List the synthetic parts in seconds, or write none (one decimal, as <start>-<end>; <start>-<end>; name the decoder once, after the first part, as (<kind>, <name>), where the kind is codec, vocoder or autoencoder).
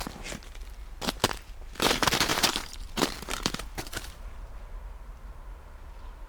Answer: 2.3-4.6 (vocoder, BigVGAN v2)